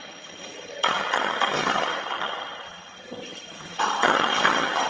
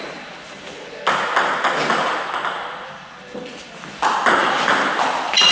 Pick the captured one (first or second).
second